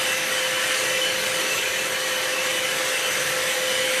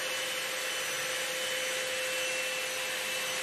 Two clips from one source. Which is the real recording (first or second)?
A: second